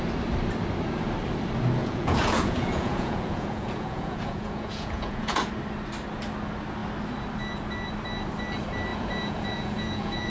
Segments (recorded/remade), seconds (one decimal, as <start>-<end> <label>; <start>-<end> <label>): 0.0-1.8 recorded; 1.8-5.5 remade; 5.5-8.9 recorded; 8.9-10.3 remade